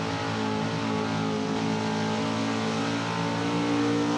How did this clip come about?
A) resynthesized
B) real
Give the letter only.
B